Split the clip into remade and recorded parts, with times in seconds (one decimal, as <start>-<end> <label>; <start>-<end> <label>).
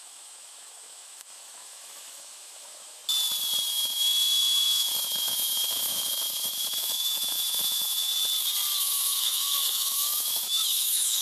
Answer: 0.0-3.0 remade; 3.0-3.7 recorded; 3.7-8.1 remade; 8.1-8.8 recorded; 8.8-11.2 remade